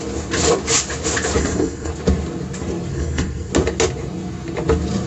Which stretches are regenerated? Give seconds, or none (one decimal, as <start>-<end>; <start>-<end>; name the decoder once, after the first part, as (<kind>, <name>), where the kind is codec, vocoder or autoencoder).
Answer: 1.4-1.9 (codec, SNAC); 2.9-3.5